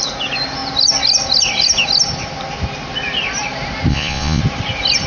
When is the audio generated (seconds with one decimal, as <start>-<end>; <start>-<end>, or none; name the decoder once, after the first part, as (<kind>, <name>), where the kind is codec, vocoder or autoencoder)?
3.9-4.4 (vocoder, Vocos)